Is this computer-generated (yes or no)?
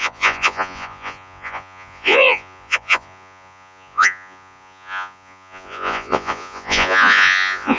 yes